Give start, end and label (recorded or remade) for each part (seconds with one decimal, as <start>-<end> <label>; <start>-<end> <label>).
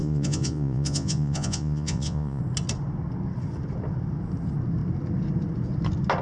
0.0-2.4 remade; 2.4-6.2 recorded